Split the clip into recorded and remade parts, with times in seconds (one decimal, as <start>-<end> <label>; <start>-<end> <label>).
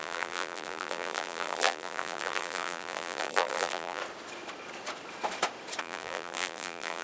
0.0-4.0 remade; 4.0-5.8 recorded; 5.8-7.0 remade